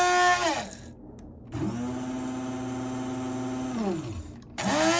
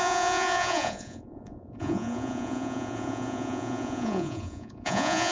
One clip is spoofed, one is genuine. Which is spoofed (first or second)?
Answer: second